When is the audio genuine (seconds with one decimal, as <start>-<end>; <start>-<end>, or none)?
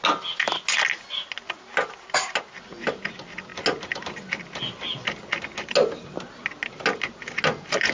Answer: 0.0-7.9